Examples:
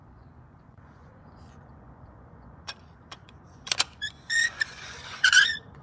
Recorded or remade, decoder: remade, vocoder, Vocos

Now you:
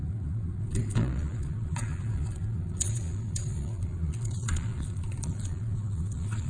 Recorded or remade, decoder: remade, vocoder, Vocos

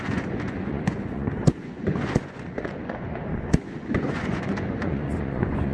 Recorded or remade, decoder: remade, vocoder, Vocos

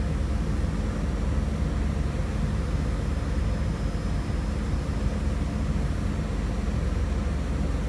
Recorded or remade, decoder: recorded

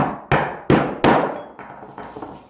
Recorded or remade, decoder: recorded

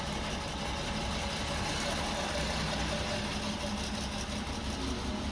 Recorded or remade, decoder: recorded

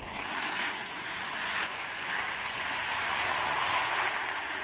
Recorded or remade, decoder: remade, vocoder, Vocos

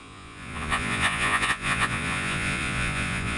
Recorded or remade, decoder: remade, vocoder, Vocos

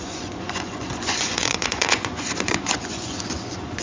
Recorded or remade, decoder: remade, vocoder, Vocos